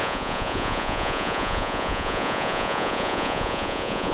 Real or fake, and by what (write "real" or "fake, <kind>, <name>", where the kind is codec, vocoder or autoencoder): fake, vocoder, Vocos